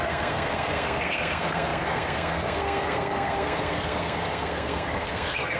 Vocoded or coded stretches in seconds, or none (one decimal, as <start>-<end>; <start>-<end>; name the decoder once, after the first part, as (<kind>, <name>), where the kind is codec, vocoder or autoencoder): 0.0-5.6 (codec, SNAC)